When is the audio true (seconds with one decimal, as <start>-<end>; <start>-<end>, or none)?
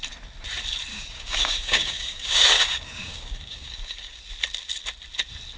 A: 0.0-0.9; 4.2-5.6